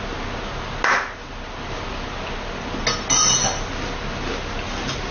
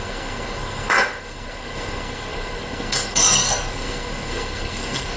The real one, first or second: first